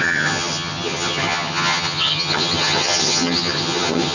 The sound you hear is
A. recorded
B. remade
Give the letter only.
B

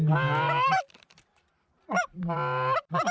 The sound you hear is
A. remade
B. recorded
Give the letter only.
A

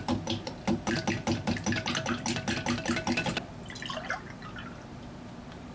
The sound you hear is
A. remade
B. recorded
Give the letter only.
B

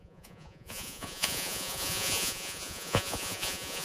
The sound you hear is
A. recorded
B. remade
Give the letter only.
B